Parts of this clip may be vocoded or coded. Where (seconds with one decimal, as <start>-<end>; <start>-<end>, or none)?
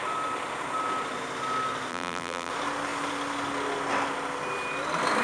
1.9-2.5